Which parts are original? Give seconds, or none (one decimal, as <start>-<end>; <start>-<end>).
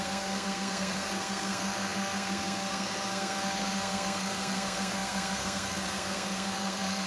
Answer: none